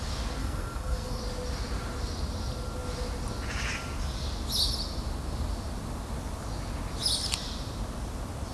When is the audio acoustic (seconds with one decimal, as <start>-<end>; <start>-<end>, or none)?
0.0-0.4; 1.2-8.5